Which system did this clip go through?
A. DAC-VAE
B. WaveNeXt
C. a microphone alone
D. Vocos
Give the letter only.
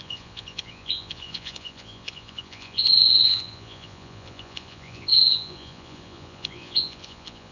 D